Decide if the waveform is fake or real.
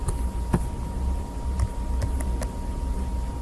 real